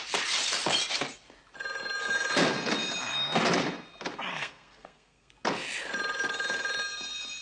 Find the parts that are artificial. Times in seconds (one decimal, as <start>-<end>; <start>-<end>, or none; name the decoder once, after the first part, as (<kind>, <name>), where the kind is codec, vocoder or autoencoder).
4.3-5.3 (codec, SNAC)

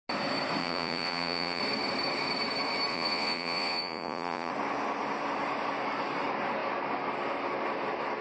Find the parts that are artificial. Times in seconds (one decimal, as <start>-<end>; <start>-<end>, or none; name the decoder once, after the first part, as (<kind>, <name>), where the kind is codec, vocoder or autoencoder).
0.6-1.6 (vocoder, Vocos); 2.9-4.5